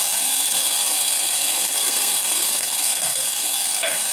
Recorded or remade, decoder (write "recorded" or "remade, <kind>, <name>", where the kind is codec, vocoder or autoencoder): remade, codec, SNAC